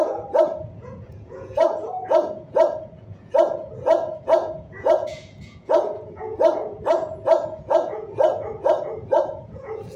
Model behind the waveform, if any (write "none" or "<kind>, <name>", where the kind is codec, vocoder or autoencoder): vocoder, Vocos